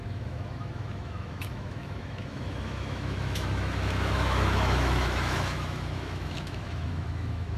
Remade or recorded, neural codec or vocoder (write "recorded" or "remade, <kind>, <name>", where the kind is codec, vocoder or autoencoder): remade, autoencoder, DAC-VAE